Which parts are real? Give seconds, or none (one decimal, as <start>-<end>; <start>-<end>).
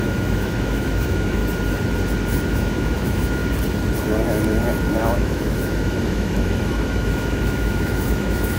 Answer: 1.4-2.5; 3.4-5.0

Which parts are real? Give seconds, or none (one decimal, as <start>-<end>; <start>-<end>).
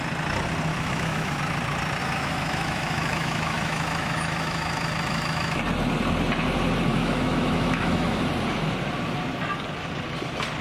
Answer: 0.0-0.7; 1.4-2.0; 5.6-6.9; 8.2-10.6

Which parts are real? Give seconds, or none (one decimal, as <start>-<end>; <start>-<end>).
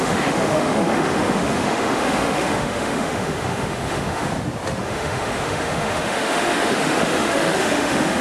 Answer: 4.3-4.8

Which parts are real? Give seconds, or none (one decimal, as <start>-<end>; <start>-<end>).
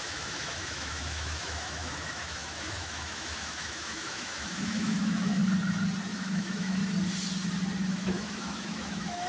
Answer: 5.4-6.1; 6.8-7.9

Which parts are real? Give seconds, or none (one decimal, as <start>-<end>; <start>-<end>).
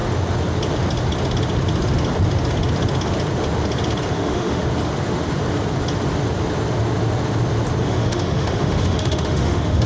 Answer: 0.0-4.1; 4.6-7.8